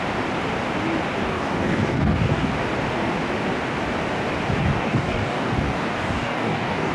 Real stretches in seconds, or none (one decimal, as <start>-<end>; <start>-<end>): 0.0-1.2; 2.5-4.6